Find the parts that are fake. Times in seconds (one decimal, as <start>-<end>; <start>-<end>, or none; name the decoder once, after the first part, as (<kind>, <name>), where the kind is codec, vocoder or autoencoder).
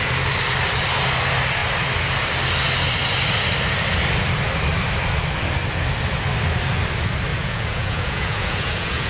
7.3-9.1 (vocoder, Vocos)